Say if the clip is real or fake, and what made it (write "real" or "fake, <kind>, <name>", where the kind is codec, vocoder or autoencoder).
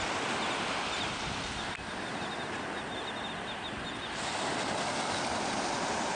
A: real